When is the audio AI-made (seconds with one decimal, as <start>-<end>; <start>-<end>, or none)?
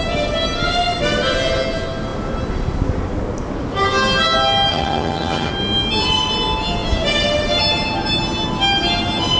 4.7-5.5